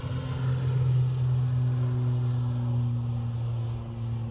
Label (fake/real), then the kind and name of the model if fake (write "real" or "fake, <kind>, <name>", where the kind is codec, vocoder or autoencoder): real